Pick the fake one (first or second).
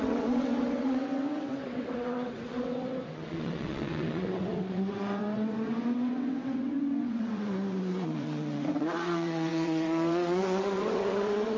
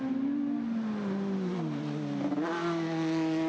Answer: first